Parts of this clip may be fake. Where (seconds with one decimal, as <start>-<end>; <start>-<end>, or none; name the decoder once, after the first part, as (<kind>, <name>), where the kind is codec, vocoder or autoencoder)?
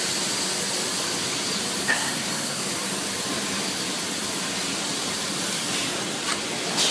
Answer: 1.9-2.6 (codec, SNAC)